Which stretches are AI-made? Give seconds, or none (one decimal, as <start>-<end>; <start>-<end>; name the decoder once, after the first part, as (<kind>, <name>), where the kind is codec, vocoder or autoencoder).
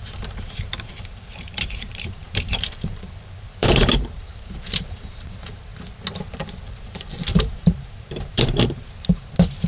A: 0.0-5.7 (vocoder, BigVGAN v2); 6.6-9.7